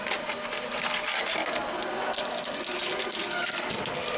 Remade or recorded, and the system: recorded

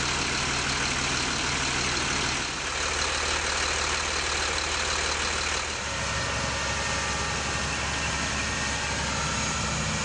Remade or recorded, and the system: recorded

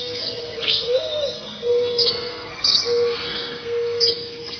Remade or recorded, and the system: remade, codec, SNAC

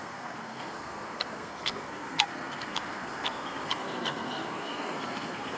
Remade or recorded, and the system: remade, codec, SNAC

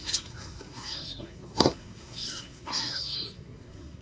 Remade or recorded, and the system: remade, codec, SNAC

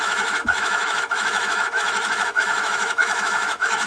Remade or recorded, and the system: remade, autoencoder, DAC-VAE